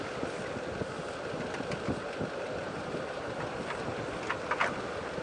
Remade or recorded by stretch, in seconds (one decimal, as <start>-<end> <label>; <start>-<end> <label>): 0.0-2.6 recorded; 2.6-3.5 remade; 3.5-5.2 recorded